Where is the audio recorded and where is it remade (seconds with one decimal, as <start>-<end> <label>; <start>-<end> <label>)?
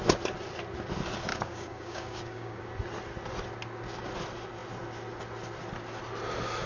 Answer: 0.0-1.3 recorded; 1.3-2.6 remade; 2.6-6.7 recorded